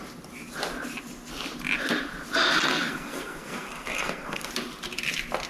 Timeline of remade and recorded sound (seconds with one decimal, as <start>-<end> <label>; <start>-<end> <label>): 0.0-2.7 recorded; 2.7-4.5 remade; 4.5-5.5 recorded

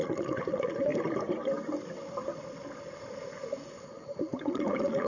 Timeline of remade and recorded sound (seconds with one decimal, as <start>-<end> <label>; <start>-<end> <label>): 0.0-0.9 remade; 0.9-3.2 recorded; 3.2-5.1 remade